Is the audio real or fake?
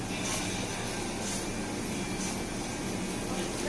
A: real